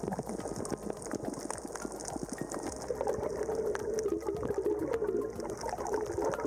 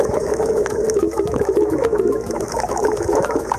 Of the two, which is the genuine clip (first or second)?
first